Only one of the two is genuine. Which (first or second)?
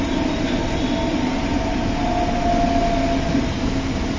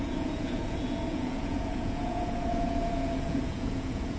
first